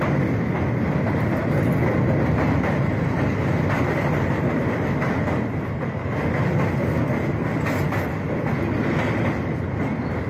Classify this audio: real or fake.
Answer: real